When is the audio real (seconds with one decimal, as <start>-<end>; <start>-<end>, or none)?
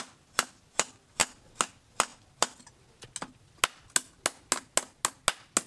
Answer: 0.0-5.7